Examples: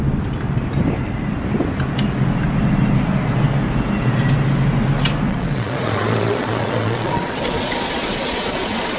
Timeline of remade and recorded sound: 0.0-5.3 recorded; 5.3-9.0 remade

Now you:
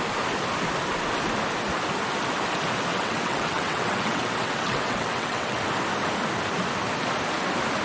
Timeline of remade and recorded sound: 0.0-2.9 recorded; 2.9-5.6 remade; 5.6-7.8 recorded

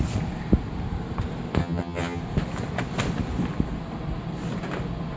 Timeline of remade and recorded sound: 0.0-1.6 recorded; 1.6-2.2 remade; 2.2-5.2 recorded